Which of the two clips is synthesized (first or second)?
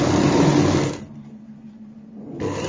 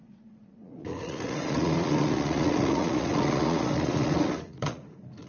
second